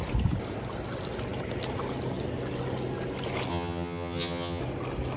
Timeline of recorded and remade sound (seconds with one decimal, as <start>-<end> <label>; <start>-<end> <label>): 0.0-3.5 recorded; 3.5-4.6 remade; 4.6-5.2 recorded